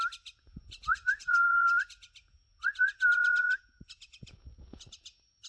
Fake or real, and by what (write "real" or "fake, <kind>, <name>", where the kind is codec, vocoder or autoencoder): fake, vocoder, Vocos